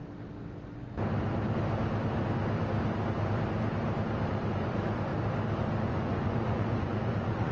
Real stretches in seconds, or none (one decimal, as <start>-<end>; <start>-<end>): 0.0-4.5; 5.1-5.9